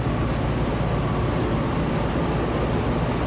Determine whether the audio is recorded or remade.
recorded